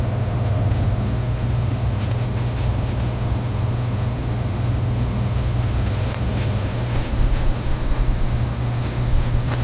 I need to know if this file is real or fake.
fake